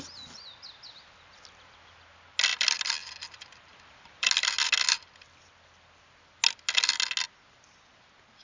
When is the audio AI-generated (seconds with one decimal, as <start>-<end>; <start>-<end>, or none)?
2.5-3.1; 3.7-4.3